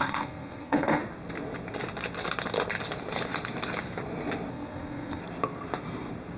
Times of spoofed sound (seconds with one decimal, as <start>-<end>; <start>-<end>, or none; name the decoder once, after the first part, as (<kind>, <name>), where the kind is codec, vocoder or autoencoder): 0.0-1.0 (codec, SNAC); 4.5-5.2